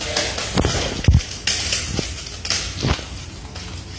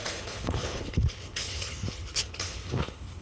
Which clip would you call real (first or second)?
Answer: first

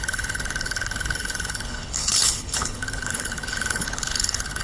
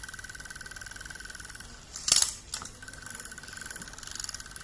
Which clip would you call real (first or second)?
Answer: second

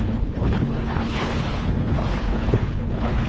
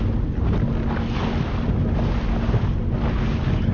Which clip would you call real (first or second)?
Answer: second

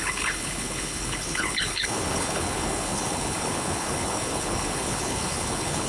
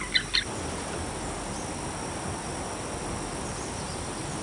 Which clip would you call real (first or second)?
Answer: second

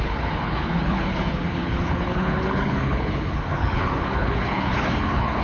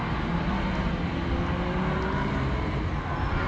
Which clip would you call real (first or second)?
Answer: second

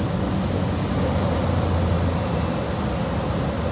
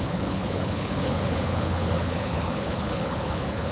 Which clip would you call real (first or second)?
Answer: first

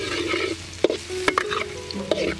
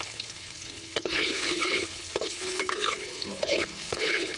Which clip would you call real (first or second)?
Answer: first